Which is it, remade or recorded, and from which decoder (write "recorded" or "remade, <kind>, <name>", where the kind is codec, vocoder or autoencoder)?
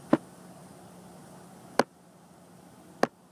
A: recorded